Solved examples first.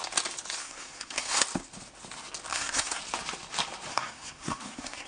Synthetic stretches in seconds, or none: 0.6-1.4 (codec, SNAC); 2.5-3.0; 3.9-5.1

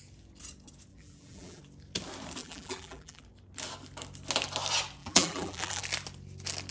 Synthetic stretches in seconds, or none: 0.9-1.6 (vocoder, BigVGAN v2); 2.4-3.2; 5.0-5.8

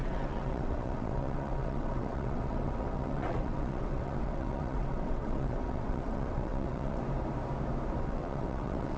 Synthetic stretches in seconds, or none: 0.0-7.0 (vocoder, WaveNeXt); 8.0-9.0